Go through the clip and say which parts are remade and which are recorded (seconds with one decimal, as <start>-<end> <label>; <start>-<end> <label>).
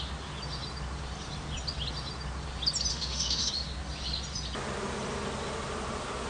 0.0-2.9 recorded; 2.9-3.5 remade; 3.5-6.3 recorded